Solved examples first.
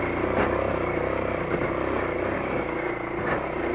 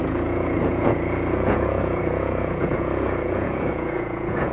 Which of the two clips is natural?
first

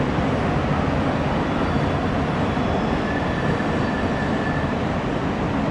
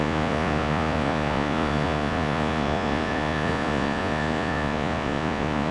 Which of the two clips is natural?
first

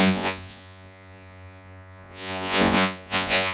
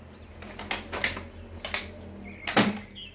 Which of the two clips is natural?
second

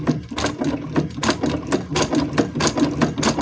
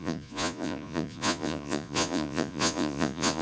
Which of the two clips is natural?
first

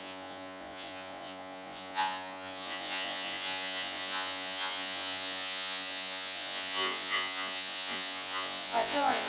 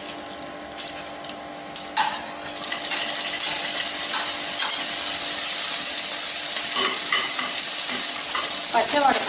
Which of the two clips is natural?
second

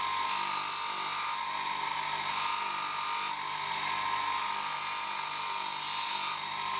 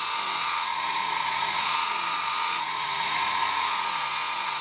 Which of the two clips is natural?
first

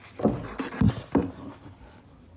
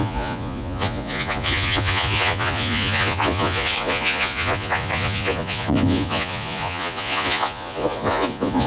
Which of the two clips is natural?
first